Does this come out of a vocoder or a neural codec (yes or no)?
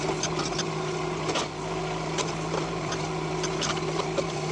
no